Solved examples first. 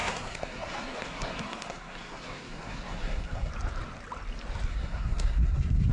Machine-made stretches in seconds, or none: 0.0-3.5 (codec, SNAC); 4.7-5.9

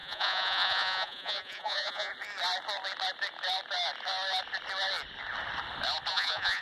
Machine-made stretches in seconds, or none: 0.0-2.1 (vocoder, Vocos); 6.1-6.6

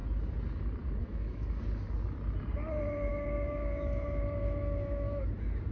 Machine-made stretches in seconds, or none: 1.0-1.6 (autoencoder, DAC-VAE); 3.1-5.2

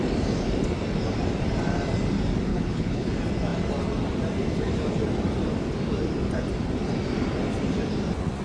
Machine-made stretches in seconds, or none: 2.5-3.1 (codec, HILCodec)